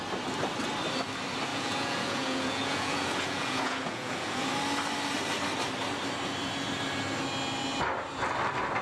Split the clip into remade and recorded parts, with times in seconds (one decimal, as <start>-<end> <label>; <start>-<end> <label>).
0.0-1.5 recorded; 1.5-4.5 remade; 4.5-8.8 recorded